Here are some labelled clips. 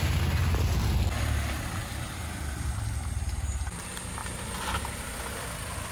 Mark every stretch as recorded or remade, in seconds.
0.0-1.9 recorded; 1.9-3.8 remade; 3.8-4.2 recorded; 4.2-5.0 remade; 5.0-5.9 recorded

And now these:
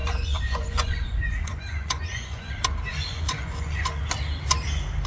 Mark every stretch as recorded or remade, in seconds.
0.0-2.5 remade; 2.5-2.9 recorded; 2.9-4.0 remade; 4.0-5.1 recorded

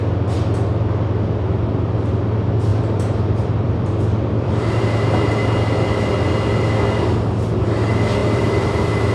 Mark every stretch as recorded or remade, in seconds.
0.0-2.7 recorded; 2.7-4.8 remade; 4.8-8.2 recorded; 8.2-8.7 remade; 8.7-9.1 recorded

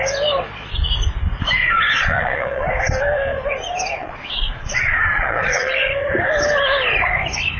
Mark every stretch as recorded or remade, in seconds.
0.0-1.6 recorded; 1.6-2.7 remade; 2.7-4.0 recorded; 4.0-5.7 remade; 5.7-7.6 recorded

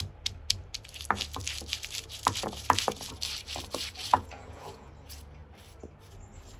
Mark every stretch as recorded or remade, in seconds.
0.0-4.1 recorded; 4.1-4.9 remade; 4.9-6.6 recorded